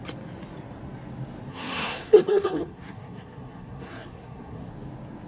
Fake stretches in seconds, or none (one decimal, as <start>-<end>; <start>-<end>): 1.5-4.7